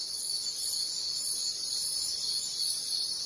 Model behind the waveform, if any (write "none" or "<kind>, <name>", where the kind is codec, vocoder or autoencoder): vocoder, BigVGAN v2